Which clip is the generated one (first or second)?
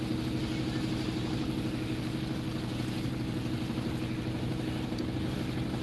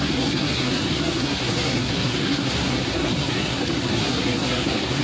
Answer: second